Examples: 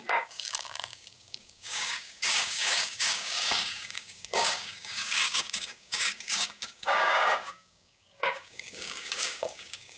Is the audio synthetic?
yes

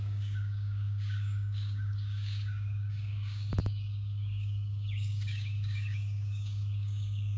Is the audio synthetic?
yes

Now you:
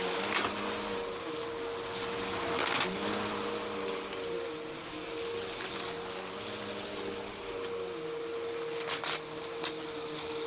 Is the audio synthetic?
no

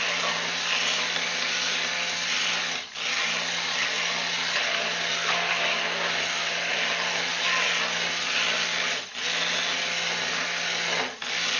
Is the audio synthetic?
no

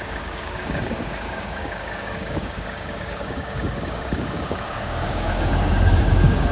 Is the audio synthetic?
yes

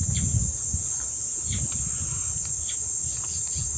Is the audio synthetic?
no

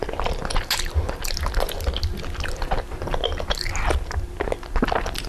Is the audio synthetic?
no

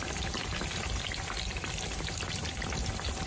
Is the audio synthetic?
no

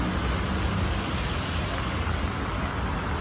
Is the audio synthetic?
no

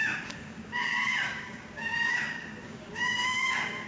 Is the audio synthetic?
yes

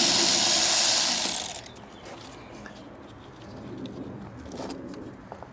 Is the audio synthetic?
no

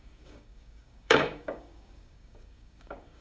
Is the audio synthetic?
yes